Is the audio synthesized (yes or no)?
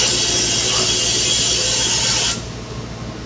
no